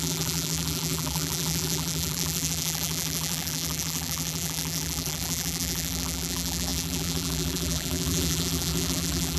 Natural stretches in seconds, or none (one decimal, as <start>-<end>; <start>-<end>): none